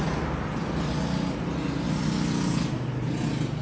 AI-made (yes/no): no